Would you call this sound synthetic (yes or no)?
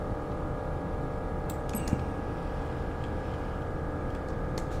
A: no